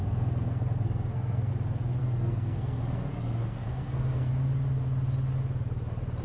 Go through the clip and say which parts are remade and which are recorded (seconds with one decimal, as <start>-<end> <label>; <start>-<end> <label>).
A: 0.0-1.5 remade; 1.5-2.0 recorded; 2.0-4.3 remade; 4.3-6.2 recorded

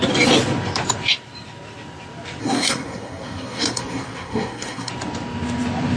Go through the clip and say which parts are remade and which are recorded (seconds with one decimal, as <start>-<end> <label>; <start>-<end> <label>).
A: 0.0-2.4 recorded; 2.4-4.9 remade; 4.9-6.0 recorded

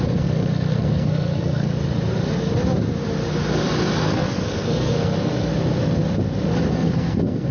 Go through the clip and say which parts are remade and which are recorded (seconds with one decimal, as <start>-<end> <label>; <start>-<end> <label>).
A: 0.0-1.7 remade; 1.7-4.0 recorded; 4.0-5.5 remade; 5.5-6.7 recorded; 6.7-7.5 remade